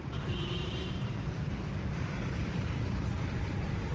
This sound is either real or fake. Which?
fake